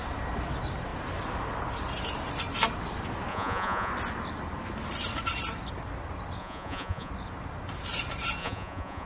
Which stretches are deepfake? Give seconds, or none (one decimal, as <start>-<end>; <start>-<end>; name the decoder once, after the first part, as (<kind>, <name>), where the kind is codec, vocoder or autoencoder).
3.3-3.9 (vocoder, Vocos); 6.4-7.1; 8.4-9.1